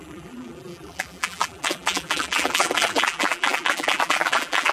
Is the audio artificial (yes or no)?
yes